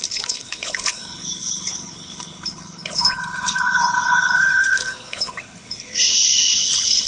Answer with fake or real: fake